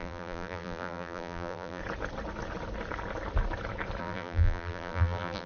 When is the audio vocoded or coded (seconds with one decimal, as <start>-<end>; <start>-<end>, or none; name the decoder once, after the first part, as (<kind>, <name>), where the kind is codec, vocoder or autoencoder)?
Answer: 0.0-1.8 (vocoder, BigVGAN v2); 4.0-5.5